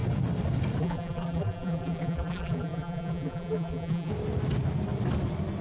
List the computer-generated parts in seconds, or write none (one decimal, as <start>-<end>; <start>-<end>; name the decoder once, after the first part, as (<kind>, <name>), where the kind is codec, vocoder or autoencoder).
0.8-4.1 (vocoder, BigVGAN v2)